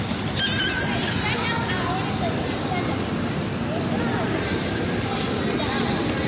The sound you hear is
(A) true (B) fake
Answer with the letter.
A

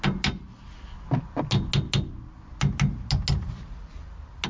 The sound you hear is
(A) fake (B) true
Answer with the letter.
B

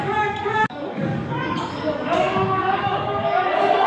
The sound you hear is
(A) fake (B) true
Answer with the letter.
A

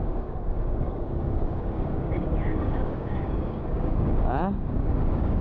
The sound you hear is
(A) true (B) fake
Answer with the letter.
B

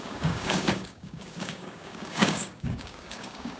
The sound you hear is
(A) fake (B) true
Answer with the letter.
A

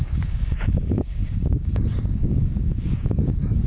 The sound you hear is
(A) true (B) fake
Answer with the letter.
B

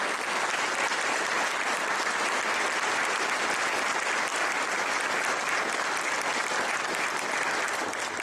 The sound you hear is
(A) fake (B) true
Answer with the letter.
B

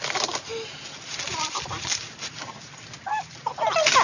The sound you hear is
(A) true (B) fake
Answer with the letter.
A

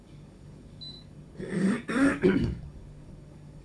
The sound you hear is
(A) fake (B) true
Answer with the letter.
A